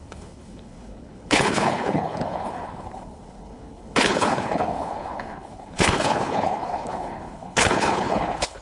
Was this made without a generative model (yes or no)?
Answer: no